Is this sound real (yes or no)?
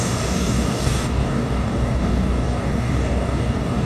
no